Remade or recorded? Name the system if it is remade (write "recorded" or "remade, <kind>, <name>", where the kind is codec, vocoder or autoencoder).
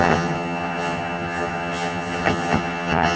remade, vocoder, HiFi-GAN